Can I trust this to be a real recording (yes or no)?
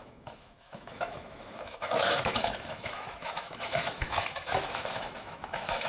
no